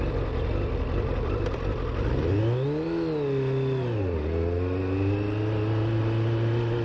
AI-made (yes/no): no